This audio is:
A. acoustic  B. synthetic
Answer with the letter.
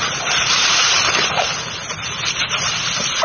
A